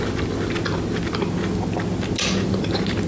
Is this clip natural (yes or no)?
yes